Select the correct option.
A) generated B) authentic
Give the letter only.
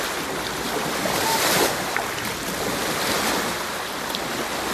B